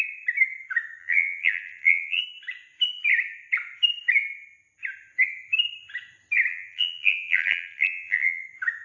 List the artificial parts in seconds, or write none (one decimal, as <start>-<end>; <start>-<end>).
1.0-2.2; 6.5-8.4